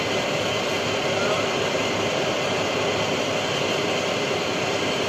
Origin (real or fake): real